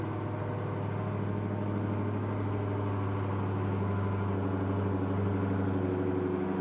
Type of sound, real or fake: real